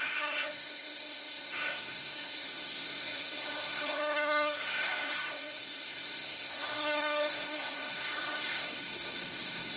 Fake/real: fake